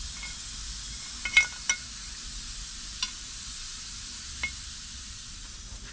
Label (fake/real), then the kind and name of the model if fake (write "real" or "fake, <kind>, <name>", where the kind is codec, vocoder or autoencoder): real